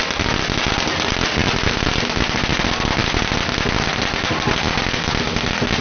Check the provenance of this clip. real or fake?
real